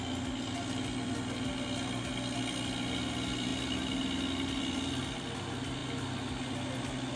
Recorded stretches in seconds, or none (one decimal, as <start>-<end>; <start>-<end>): 0.0-7.2

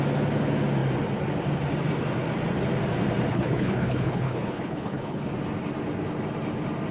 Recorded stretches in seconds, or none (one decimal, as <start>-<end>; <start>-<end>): 0.0-3.3; 5.3-6.9

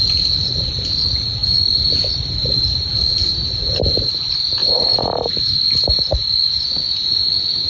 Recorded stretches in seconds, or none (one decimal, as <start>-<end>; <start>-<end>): 0.0-1.4; 2.9-4.6; 6.7-7.7

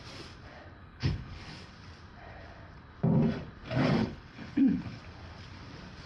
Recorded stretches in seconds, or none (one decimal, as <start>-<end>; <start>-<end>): 0.0-0.8; 1.7-4.0; 5.0-6.1

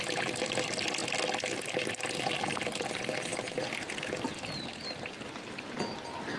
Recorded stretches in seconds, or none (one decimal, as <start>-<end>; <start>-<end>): 0.0-4.3; 5.7-6.4

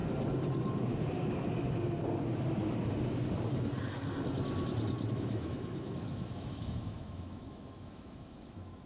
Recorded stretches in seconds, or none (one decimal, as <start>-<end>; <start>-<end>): 0.0-5.1